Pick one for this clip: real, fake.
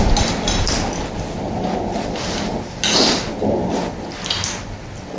real